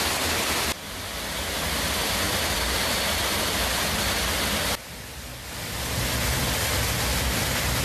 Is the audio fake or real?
real